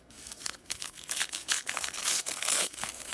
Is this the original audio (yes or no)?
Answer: no